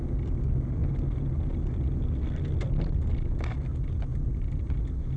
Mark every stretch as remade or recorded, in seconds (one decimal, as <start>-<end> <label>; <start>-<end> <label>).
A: 0.0-4.1 recorded; 4.1-4.8 remade; 4.8-5.2 recorded